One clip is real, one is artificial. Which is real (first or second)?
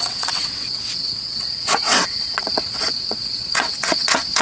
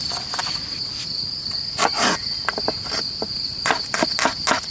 second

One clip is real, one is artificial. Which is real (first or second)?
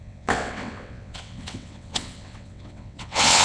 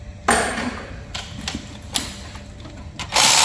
second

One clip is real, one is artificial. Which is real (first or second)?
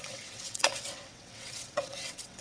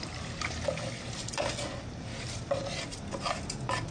second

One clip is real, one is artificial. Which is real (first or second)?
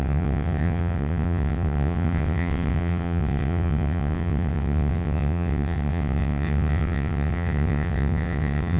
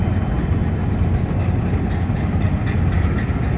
second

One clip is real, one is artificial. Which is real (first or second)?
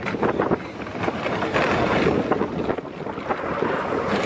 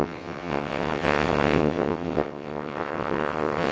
first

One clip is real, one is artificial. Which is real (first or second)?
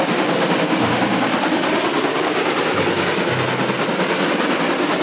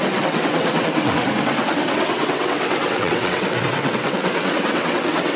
first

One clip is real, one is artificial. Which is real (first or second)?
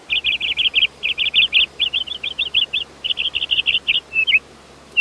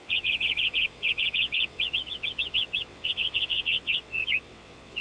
first